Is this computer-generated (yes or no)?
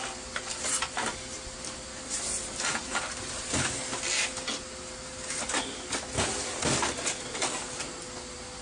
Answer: no